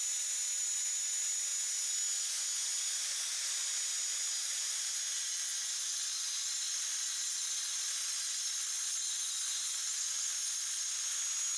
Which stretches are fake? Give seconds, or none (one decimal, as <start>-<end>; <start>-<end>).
4.4-5.0; 9.8-10.3